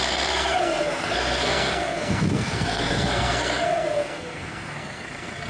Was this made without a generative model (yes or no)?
no